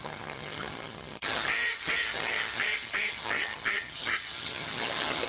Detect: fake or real fake